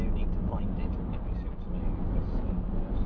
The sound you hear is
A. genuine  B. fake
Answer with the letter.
A